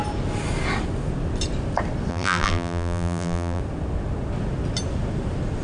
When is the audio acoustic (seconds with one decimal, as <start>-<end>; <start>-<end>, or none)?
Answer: 0.0-2.1; 3.6-5.6